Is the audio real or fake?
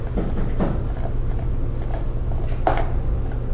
real